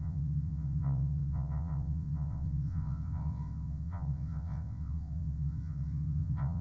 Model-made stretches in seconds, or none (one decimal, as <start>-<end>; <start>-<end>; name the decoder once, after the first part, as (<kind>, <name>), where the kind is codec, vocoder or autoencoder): 0.0-6.6 (vocoder, WaveNeXt)